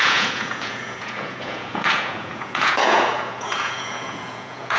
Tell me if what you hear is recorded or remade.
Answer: remade